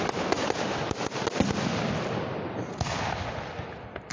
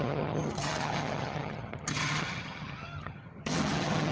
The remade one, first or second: second